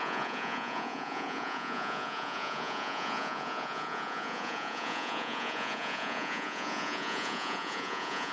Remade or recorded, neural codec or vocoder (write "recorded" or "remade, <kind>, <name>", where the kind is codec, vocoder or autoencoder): remade, vocoder, Vocos